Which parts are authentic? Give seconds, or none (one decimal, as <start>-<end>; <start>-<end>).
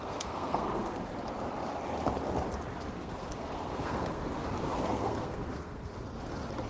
1.1-2.9; 4.2-4.8; 5.9-6.7